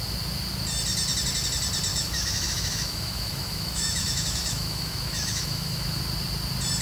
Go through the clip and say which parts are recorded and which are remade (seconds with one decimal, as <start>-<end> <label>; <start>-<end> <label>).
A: 0.0-1.9 recorded; 1.9-6.0 remade; 6.0-6.8 recorded

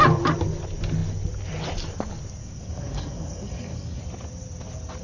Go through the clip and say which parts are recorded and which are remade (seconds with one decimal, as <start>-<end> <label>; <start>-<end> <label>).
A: 0.0-2.4 recorded; 2.4-4.0 remade; 4.0-5.0 recorded

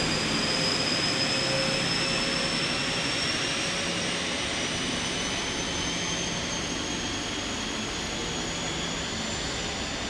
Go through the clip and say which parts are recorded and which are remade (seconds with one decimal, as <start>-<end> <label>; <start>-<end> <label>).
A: 0.0-2.8 recorded; 2.8-3.3 remade; 3.3-10.1 recorded

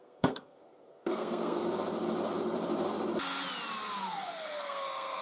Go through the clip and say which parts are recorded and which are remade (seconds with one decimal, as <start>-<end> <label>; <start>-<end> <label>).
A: 0.0-1.6 remade; 1.6-4.0 recorded; 4.0-5.2 remade